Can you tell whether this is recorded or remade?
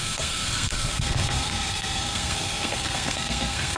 remade